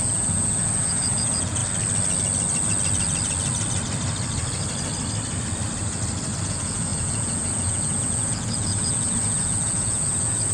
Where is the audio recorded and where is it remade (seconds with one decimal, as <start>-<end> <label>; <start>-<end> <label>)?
0.0-1.6 remade; 1.6-6.4 recorded; 6.4-10.5 remade